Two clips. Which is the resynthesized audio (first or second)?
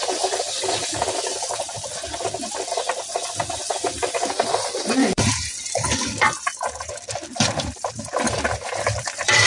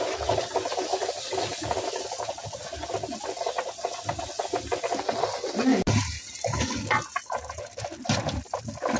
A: first